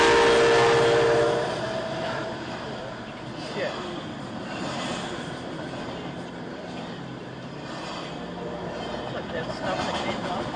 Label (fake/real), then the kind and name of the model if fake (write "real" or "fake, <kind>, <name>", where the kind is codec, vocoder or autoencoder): real